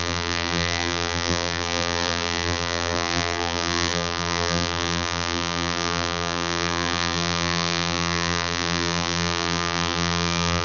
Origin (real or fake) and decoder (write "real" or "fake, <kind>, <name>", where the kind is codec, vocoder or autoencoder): fake, vocoder, BigVGAN v2